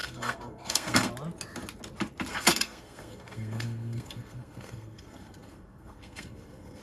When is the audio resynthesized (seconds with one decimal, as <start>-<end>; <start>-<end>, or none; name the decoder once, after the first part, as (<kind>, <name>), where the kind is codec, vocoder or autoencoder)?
0.0-1.1 (codec, SNAC); 2.3-6.8